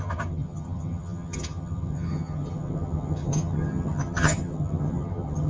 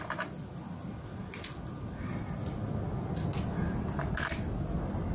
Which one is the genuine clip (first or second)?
second